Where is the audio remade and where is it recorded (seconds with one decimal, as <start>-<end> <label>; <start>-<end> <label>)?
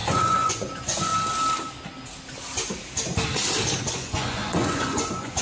0.0-1.1 remade; 1.1-3.9 recorded; 3.9-5.4 remade